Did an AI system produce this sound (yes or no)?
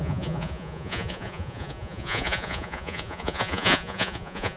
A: yes